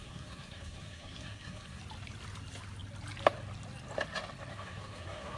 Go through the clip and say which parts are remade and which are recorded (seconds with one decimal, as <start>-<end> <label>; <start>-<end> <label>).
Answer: 0.0-1.8 remade; 1.8-4.5 recorded; 4.5-5.4 remade